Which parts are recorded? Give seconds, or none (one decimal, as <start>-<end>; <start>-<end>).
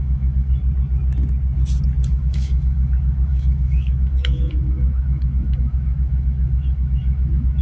0.6-2.1